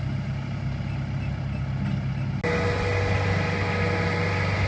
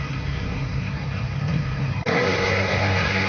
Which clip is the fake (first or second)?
second